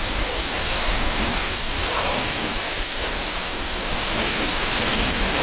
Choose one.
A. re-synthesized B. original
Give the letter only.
A